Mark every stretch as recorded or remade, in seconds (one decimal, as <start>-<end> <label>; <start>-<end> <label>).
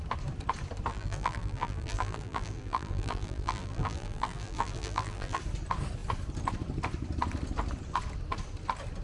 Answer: 0.0-0.9 recorded; 0.9-5.4 remade; 5.4-9.0 recorded